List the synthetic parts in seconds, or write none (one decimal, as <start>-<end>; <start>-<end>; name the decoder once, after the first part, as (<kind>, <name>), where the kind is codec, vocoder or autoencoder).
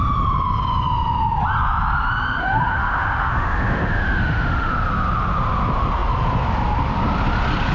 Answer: 2.4-4.7 (autoencoder, DAC-VAE)